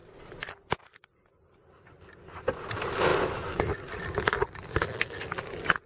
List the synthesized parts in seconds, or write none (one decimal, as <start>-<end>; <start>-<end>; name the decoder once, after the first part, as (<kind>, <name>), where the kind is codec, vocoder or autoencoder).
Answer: none

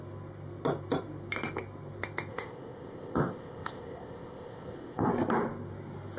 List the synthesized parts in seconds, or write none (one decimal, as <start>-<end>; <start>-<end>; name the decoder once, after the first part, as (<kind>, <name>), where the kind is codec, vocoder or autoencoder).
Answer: 2.3-5.1 (codec, ZipCodec)

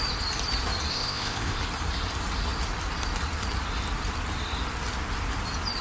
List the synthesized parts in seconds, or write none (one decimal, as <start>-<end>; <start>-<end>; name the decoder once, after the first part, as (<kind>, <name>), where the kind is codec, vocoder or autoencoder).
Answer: 0.9-1.6 (codec, ZipCodec)

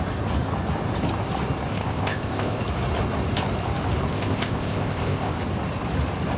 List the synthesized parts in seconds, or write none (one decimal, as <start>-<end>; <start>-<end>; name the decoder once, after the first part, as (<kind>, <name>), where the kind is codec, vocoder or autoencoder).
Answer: 1.7-2.6 (codec, ZipCodec); 4.1-5.4

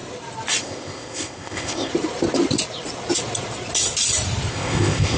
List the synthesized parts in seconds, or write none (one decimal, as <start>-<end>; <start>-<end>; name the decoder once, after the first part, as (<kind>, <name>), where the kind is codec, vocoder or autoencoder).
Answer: 0.6-1.9 (codec, ZipCodec); 4.5-5.2

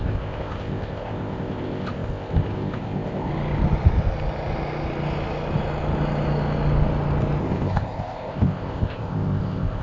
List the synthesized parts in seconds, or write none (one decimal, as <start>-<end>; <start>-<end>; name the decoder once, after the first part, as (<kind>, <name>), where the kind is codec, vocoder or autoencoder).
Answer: 0.0-3.3 (codec, ZipCodec); 7.4-9.8